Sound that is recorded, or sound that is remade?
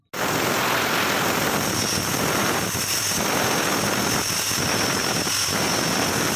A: recorded